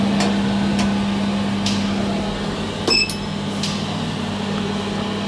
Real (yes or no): yes